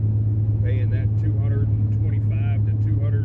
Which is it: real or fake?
real